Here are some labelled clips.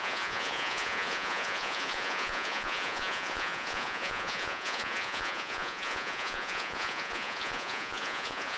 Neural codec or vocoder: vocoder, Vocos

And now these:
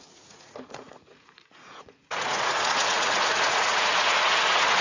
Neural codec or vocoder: vocoder, Vocos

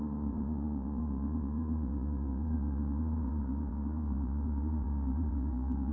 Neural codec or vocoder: vocoder, Vocos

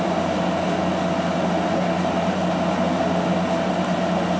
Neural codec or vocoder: none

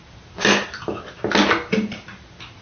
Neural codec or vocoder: none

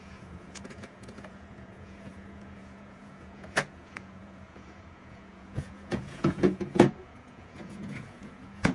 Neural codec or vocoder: vocoder, Vocos